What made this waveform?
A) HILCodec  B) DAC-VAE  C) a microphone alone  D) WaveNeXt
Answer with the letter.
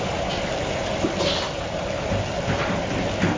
C